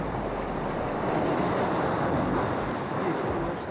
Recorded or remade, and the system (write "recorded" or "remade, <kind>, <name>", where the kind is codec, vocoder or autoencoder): recorded